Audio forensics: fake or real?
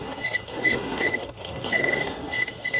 fake